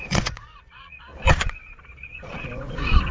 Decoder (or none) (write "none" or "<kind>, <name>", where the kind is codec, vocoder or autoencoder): vocoder, Vocos